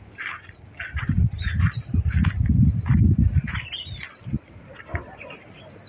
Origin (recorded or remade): recorded